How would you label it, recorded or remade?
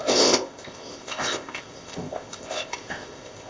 remade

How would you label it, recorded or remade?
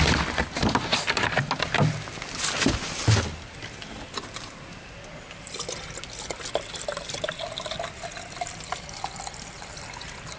recorded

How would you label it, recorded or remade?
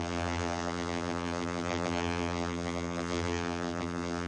remade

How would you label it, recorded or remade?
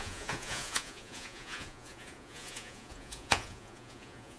remade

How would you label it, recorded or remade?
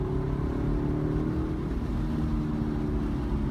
recorded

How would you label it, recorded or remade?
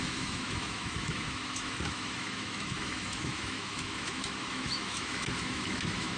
remade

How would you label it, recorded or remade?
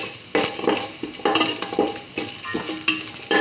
recorded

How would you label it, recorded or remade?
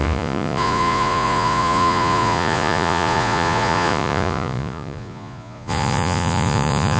remade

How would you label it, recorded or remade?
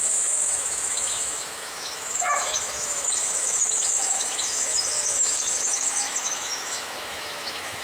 remade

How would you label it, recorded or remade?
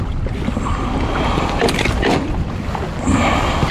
recorded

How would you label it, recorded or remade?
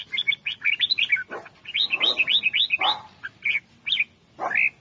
recorded